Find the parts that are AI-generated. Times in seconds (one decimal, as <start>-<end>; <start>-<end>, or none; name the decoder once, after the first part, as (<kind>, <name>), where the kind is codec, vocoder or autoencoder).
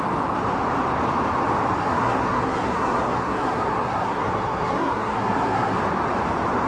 1.8-5.8 (codec, SNAC)